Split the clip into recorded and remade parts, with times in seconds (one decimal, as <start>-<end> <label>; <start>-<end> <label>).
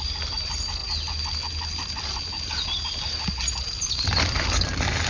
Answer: 0.0-0.8 remade; 0.8-3.9 recorded; 3.9-5.1 remade